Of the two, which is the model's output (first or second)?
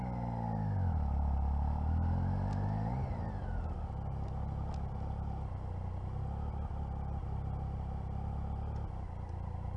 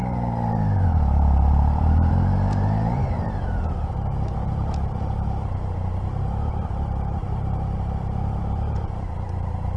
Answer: second